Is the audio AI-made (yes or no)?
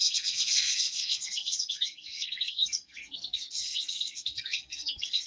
yes